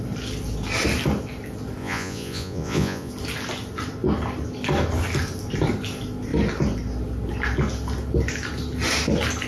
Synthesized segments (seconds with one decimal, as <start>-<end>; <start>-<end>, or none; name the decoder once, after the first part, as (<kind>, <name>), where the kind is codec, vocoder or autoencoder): 1.8-3.1 (vocoder, Vocos)